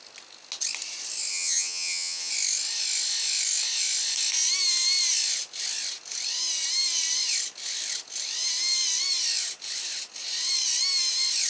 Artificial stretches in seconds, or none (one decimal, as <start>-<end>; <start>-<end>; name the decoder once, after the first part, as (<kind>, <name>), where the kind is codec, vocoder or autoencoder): 1.3-2.3 (vocoder, HiFi-GAN)